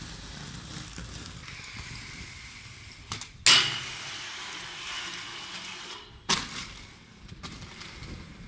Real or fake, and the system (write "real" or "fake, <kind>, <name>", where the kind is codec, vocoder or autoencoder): real